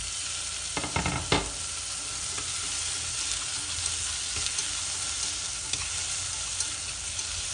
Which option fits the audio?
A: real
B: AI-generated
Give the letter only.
A